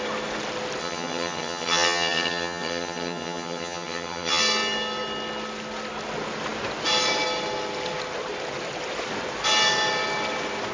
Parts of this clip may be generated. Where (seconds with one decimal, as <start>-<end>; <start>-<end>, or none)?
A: 0.8-4.4